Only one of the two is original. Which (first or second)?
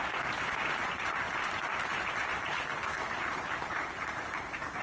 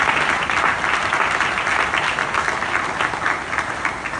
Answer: second